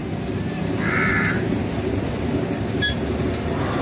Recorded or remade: recorded